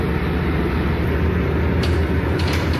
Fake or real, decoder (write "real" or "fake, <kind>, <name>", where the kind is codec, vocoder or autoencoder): real